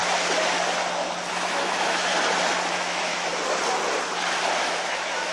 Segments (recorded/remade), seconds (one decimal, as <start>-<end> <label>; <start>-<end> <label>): 0.0-1.3 recorded; 1.3-2.1 remade; 2.1-2.7 recorded; 2.7-3.3 remade; 3.3-4.6 recorded; 4.6-5.3 remade